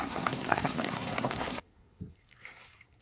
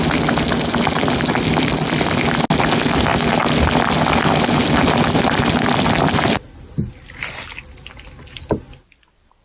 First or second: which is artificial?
first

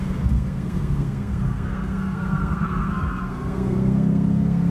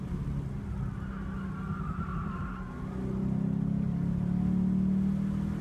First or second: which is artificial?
first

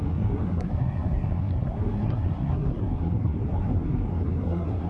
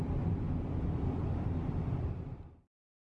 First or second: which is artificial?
first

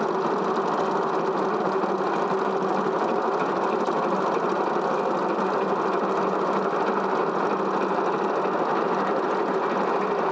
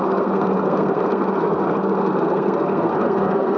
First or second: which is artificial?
second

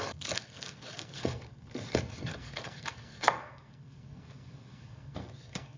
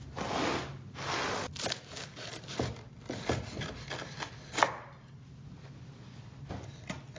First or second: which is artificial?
first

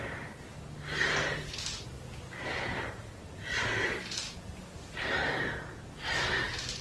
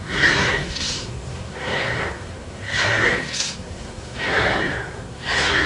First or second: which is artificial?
second